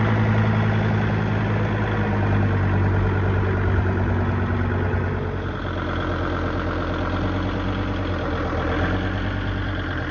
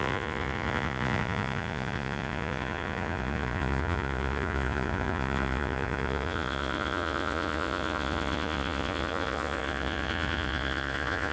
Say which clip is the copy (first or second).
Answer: second